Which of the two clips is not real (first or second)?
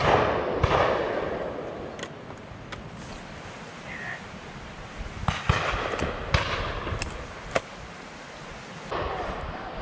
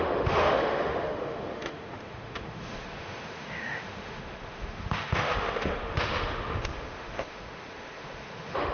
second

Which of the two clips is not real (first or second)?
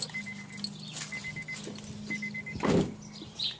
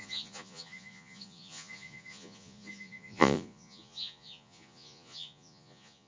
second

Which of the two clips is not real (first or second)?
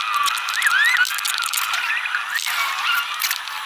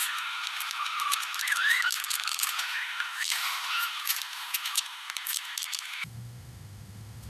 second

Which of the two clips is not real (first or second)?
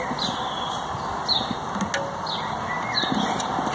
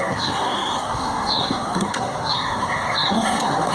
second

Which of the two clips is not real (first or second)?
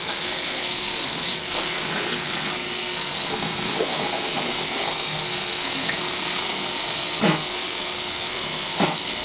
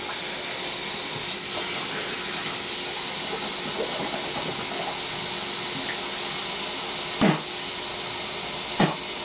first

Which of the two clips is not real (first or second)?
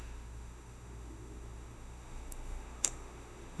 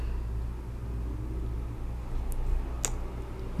first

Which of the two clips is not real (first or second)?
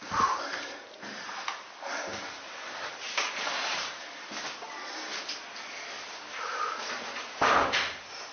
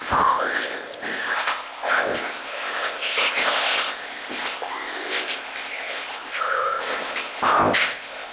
second